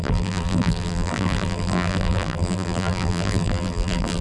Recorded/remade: remade